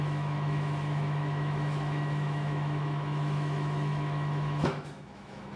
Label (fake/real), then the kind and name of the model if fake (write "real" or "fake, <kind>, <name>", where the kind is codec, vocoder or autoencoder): fake, autoencoder, DAC-VAE